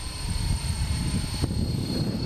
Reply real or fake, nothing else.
fake